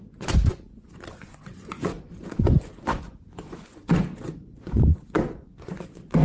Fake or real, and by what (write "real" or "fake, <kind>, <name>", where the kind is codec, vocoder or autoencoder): fake, vocoder, Vocos